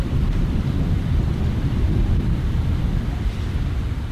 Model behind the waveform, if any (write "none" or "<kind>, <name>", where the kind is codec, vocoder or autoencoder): vocoder, BigVGAN v2